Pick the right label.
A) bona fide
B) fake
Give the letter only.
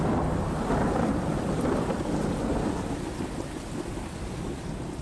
A